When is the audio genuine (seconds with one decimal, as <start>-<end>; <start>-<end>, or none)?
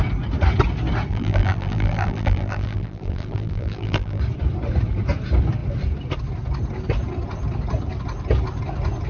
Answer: 0.0-1.1; 4.2-9.1